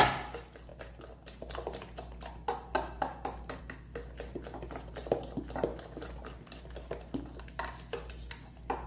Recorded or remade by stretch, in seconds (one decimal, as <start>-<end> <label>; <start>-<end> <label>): 0.0-8.9 recorded